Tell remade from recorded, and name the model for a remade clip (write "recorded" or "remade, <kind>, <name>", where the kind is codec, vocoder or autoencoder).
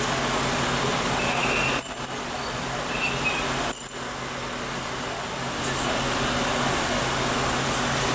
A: recorded